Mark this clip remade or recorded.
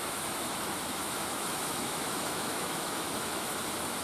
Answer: remade